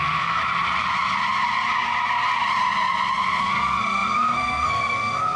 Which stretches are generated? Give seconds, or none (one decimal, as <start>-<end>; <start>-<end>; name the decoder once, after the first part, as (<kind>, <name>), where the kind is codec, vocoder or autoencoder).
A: 0.0-0.4 (codec, SNAC); 3.4-5.4